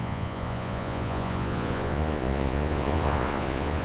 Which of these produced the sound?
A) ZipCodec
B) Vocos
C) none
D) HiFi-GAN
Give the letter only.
B